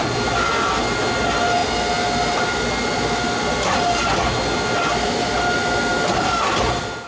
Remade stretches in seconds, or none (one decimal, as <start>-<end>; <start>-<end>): none